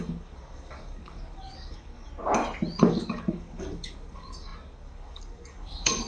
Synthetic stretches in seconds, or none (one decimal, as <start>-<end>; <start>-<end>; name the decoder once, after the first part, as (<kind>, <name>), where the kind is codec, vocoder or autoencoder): 0.0-2.1 (codec, DAC); 2.8-6.1